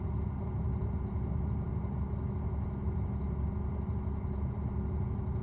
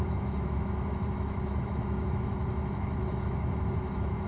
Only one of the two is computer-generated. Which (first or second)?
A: second